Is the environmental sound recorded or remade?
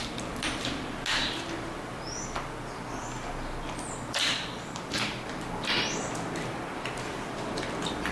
recorded